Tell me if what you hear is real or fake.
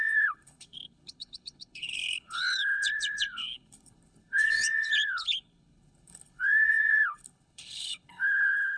fake